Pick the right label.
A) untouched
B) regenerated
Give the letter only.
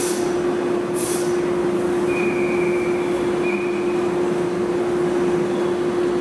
A